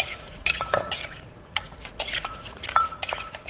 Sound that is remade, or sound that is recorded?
remade